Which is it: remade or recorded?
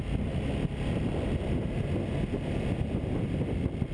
recorded